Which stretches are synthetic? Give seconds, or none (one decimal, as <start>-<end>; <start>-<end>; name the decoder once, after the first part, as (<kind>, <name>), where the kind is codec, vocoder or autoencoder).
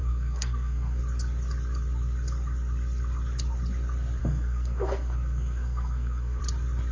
0.0-1.0 (codec, SNAC); 4.2-6.4